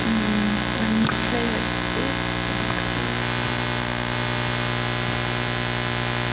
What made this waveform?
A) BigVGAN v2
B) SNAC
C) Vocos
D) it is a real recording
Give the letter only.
D